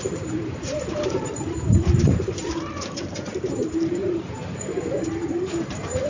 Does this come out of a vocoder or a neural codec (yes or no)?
yes